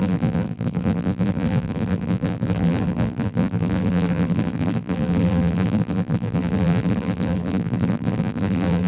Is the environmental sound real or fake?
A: fake